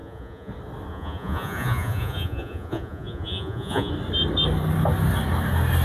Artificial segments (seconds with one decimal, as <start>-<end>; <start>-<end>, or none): 0.0-0.5; 0.9-3.9